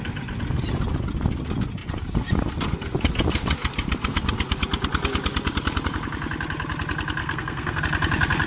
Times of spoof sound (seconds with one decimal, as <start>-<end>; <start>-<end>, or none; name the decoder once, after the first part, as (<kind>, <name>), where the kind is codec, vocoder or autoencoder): 7.2-7.8 (codec, SNAC)